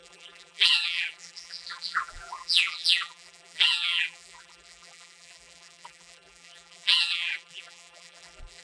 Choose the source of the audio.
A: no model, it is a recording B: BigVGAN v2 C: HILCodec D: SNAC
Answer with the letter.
B